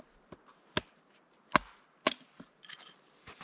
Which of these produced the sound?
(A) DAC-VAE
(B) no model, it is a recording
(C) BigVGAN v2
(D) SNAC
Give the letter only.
B